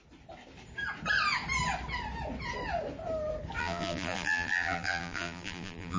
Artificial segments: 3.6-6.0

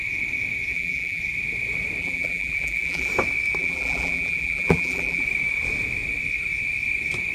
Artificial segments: 0.7-1.2; 2.0-3.1; 3.6-5.2

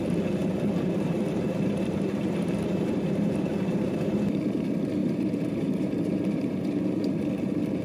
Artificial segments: 0.4-4.4; 5.0-7.2

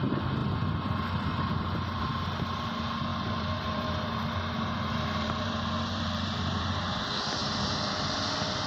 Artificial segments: 3.1-7.0; 7.4-8.1

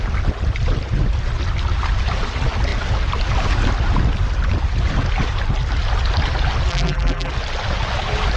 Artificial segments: 6.7-7.3